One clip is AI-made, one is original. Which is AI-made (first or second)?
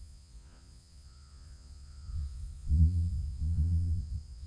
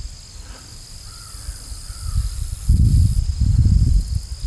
first